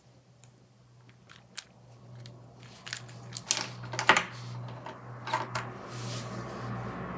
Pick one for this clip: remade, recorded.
recorded